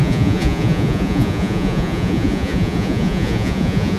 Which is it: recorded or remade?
remade